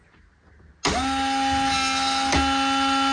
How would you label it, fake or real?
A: real